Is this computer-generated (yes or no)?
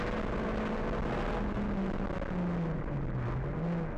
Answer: no